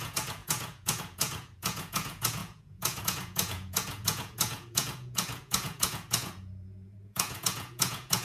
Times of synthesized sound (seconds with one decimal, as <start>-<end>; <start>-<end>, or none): 0.0-8.2